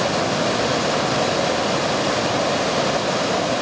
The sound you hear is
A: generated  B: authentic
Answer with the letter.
B